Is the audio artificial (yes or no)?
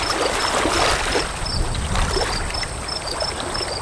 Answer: no